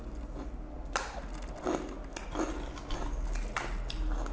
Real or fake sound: real